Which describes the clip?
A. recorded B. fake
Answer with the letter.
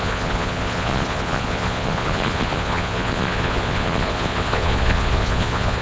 B